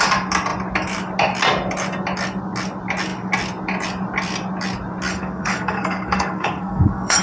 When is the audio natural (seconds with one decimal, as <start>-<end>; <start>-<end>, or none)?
0.0-5.1